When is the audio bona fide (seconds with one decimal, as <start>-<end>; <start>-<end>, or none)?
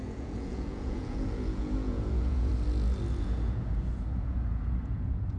2.5-3.2